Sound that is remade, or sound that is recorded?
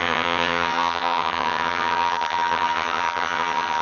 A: remade